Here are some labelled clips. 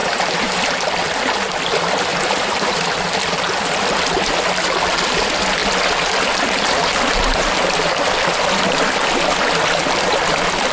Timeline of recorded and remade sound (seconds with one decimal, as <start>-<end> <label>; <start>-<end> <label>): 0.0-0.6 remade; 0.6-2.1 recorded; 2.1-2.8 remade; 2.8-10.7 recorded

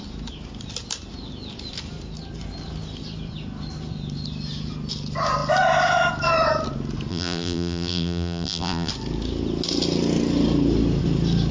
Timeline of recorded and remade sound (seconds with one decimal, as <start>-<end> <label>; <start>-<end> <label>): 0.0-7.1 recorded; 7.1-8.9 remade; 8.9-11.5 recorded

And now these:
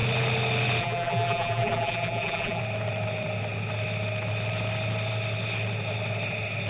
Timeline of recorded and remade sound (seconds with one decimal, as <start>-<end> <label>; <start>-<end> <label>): 0.0-0.8 recorded; 0.8-2.6 remade; 2.6-6.7 recorded